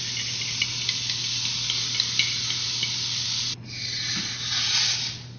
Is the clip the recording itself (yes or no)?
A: yes